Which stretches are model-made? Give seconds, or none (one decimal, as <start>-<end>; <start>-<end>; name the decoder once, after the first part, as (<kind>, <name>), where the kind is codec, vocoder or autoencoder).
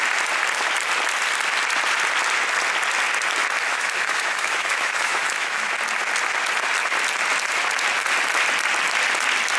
3.7-5.7 (autoencoder, DAC-VAE)